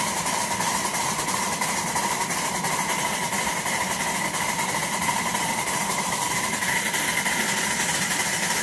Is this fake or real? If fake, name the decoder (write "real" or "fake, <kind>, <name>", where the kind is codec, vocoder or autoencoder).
fake, vocoder, BigVGAN v2